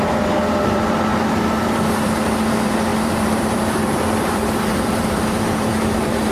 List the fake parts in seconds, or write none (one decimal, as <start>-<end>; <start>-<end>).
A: 0.0-6.3